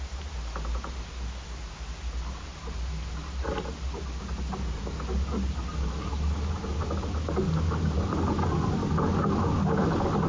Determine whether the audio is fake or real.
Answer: real